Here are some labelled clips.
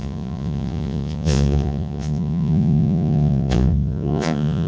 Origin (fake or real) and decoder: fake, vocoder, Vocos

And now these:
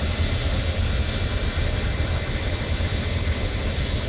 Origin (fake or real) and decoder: real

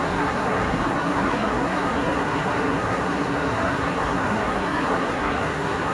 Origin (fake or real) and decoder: fake, codec, SNAC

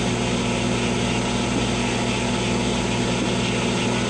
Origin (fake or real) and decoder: real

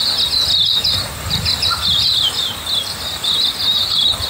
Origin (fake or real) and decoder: real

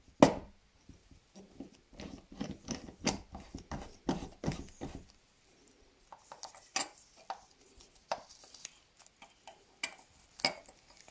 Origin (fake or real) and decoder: real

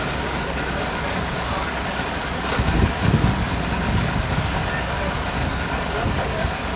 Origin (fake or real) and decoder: fake, codec, DAC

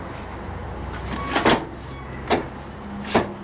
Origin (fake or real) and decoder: real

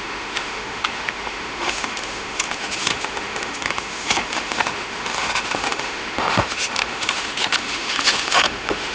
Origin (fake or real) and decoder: fake, autoencoder, DAC-VAE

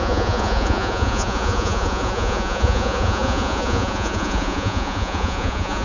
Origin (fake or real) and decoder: fake, vocoder, Vocos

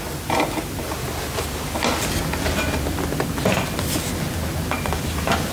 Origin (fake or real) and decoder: real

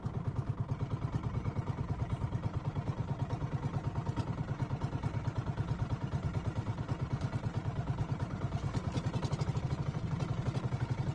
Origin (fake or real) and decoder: fake, vocoder, BigVGAN v2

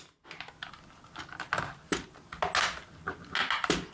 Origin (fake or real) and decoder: real